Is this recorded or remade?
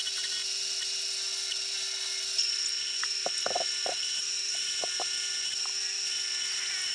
recorded